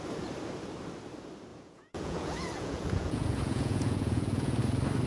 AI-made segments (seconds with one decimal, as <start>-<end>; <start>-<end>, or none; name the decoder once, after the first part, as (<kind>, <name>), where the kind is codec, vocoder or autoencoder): 1.5-4.6 (vocoder, Vocos)